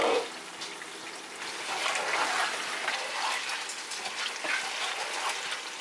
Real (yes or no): yes